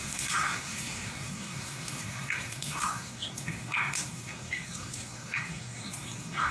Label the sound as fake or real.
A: fake